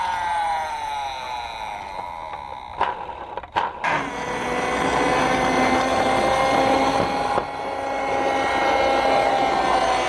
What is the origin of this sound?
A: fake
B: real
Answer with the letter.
B